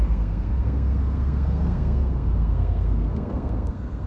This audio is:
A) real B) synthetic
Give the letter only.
B